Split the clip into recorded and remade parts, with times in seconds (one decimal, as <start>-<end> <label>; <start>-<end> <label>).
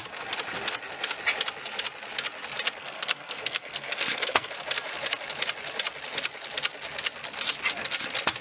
0.0-2.8 recorded; 2.8-4.5 remade; 4.5-8.4 recorded